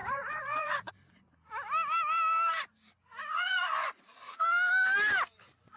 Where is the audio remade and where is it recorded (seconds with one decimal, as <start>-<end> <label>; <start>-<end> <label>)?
0.0-0.9 remade; 0.9-3.2 recorded; 3.2-4.0 remade; 4.0-5.8 recorded